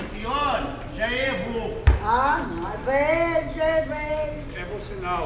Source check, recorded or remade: recorded